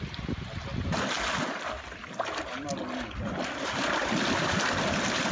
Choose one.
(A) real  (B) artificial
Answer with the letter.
A